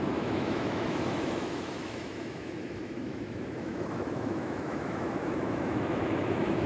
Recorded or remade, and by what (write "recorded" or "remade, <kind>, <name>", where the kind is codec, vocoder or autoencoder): remade, autoencoder, DAC-VAE